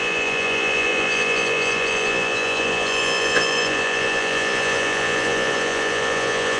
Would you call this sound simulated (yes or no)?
yes